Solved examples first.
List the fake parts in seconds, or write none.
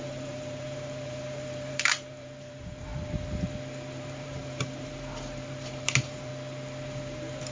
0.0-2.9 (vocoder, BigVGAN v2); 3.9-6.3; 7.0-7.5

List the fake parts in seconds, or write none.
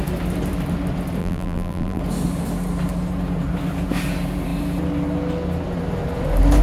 1.2-2.0 (vocoder, BigVGAN v2)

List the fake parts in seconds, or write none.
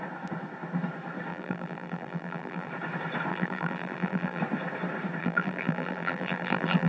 1.3-2.7 (vocoder, BigVGAN v2); 3.3-4.4; 5.2-6.9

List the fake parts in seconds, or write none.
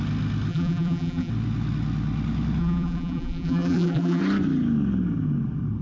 0.5-1.3 (vocoder, BigVGAN v2); 2.6-4.2